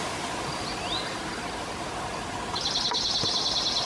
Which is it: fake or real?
real